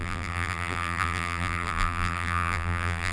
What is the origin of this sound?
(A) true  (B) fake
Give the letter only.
B